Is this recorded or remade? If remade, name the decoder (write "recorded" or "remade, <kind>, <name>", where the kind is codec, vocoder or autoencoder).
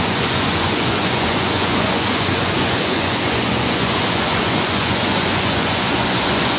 remade, vocoder, Vocos